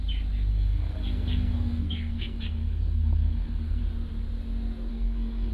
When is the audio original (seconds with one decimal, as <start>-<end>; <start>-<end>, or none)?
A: 0.0-0.5; 3.8-4.9